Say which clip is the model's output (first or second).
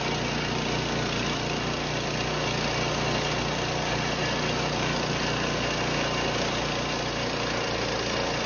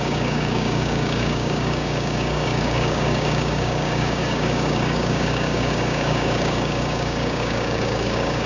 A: second